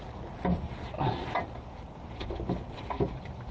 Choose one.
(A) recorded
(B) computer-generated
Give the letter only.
A